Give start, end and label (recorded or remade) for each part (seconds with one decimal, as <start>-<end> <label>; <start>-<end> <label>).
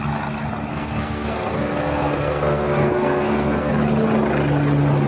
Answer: 0.0-0.7 recorded; 0.7-3.7 remade; 3.7-5.1 recorded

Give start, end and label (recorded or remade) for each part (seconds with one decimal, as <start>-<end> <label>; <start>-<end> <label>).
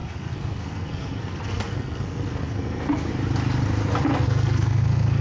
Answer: 0.0-3.1 remade; 3.1-4.1 recorded; 4.1-5.2 remade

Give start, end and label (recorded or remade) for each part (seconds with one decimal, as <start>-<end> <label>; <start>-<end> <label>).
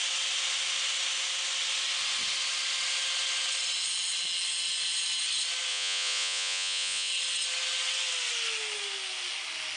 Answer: 0.0-5.7 recorded; 5.7-7.1 remade; 7.1-9.8 recorded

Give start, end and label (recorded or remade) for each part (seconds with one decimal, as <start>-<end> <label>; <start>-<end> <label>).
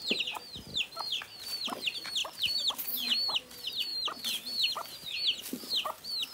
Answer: 0.0-0.7 recorded; 0.7-1.2 remade; 1.2-2.2 recorded; 2.2-2.7 remade; 2.7-6.3 recorded